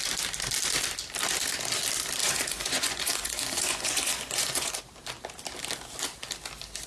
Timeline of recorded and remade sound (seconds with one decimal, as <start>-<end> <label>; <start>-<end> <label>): 0.0-2.2 recorded; 2.2-4.8 remade; 4.8-6.9 recorded

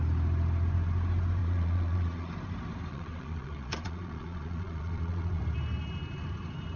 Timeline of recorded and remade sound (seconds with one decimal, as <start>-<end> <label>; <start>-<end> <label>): 0.0-1.4 recorded; 1.4-2.3 remade; 2.3-2.9 recorded; 2.9-5.4 remade; 5.4-6.8 recorded

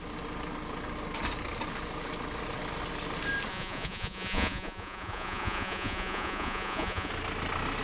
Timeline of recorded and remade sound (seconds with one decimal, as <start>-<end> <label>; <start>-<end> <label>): 0.0-3.5 recorded; 3.5-7.1 remade; 7.1-7.8 recorded

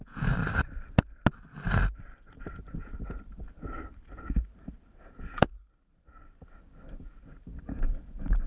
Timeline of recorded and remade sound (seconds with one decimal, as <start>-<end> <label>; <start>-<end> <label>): 0.0-0.4 remade; 0.4-5.0 recorded; 5.0-5.6 remade; 5.6-7.9 recorded; 7.9-8.5 remade

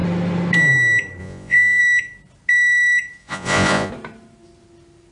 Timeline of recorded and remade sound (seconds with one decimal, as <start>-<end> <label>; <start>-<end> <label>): 0.0-1.2 recorded; 1.2-1.8 remade; 1.8-3.2 recorded; 3.2-3.9 remade; 3.9-5.1 recorded

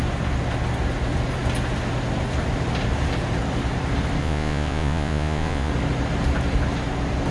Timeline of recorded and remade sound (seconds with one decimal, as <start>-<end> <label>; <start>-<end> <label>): 0.0-4.2 recorded; 4.2-5.7 remade; 5.7-7.3 recorded

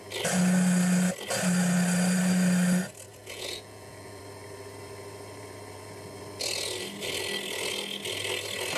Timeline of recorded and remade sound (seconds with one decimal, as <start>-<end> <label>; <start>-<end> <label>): 0.0-3.1 recorded; 3.1-4.2 remade; 4.2-8.8 recorded